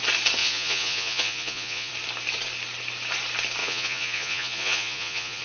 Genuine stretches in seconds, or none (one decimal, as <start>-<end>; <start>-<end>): 0.0-0.4; 1.9-3.6